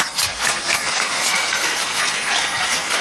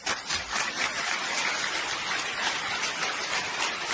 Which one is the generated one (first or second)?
first